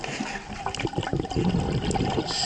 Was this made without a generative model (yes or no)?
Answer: yes